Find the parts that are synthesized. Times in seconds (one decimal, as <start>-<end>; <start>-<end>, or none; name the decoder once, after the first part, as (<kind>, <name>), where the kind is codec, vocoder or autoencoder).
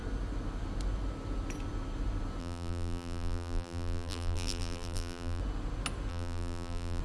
2.4-5.4 (vocoder, BigVGAN v2); 6.1-7.0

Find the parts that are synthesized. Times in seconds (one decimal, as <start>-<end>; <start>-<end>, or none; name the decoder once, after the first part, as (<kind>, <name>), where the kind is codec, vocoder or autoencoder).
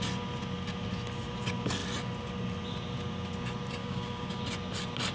3.8-4.4 (codec, DAC)